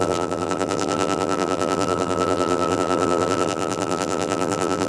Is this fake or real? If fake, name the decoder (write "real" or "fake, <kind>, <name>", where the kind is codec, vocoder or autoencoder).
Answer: fake, vocoder, BigVGAN v2